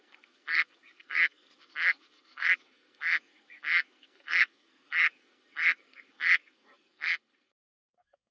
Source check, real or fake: fake